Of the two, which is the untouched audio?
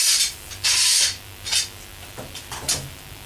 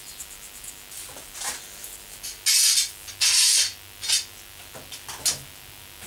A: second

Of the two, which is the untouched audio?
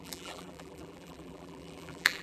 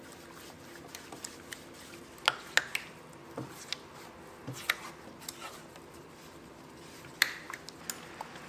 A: second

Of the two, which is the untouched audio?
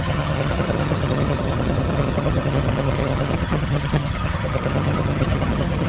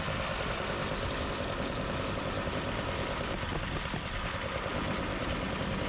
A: second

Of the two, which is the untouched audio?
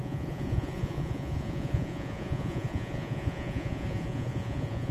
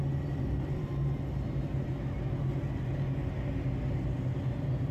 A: second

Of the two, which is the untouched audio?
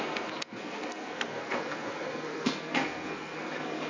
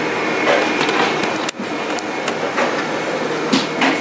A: second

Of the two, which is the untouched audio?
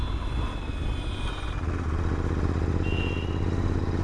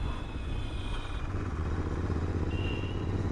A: first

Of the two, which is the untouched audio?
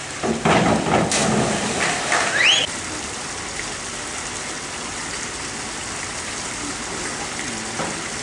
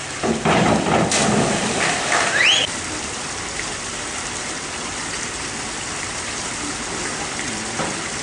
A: first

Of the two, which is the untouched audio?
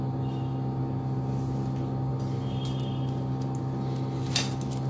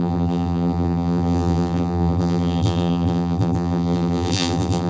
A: first